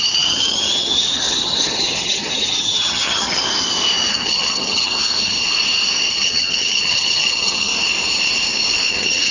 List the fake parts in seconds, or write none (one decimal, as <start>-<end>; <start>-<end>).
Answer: 0.0-3.4; 4.1-4.9; 6.1-7.7; 8.9-9.3